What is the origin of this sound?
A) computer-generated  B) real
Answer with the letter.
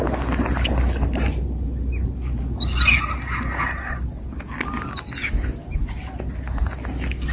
B